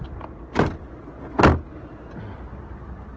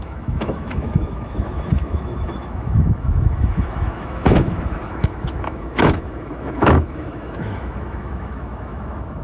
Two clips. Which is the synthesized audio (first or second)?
second